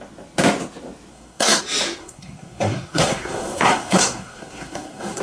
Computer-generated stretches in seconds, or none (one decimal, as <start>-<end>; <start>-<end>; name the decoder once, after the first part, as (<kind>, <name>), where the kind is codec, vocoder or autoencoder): 1.1-1.6 (codec, SNAC); 2.0-5.2